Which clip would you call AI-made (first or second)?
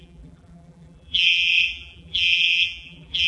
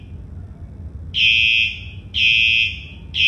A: first